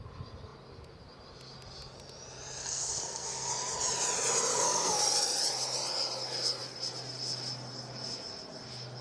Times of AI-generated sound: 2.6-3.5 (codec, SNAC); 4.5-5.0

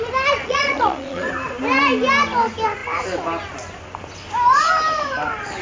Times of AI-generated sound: 0.4-1.3 (vocoder, Vocos)